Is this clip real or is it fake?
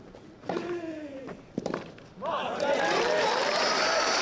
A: fake